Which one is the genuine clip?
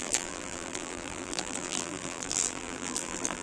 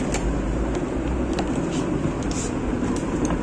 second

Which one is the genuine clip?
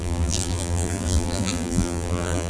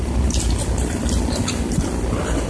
second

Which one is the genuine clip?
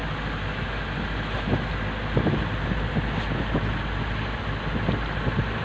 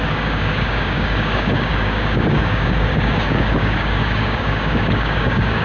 first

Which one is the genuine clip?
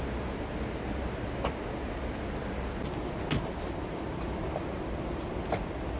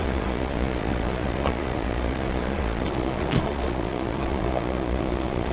first